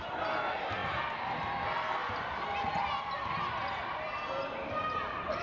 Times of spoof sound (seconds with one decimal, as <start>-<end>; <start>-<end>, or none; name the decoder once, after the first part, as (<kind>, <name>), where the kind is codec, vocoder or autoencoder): none